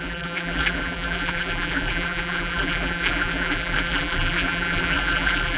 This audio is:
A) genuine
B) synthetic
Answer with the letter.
B